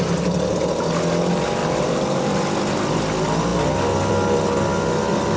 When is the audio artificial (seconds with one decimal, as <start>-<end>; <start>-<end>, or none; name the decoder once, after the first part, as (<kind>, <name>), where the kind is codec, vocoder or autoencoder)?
1.6-2.3 (vocoder, BigVGAN v2)

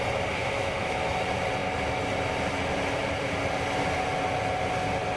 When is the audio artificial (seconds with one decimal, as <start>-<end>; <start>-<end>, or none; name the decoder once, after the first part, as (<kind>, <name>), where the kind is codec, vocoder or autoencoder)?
0.4-1.1 (autoencoder, DAC-VAE)

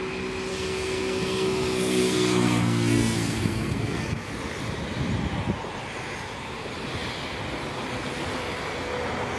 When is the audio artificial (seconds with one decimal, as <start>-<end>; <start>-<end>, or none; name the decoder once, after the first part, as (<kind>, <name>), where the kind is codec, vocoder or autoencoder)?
0.5-4.3 (codec, SNAC)